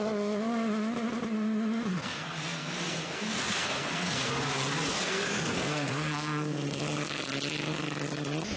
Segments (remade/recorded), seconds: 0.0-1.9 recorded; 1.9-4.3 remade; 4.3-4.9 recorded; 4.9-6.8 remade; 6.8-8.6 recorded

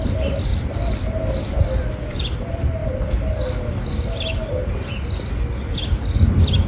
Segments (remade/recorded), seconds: 0.0-6.7 recorded